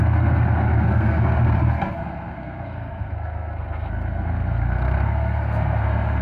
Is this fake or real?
fake